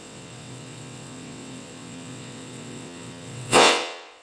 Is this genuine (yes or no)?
no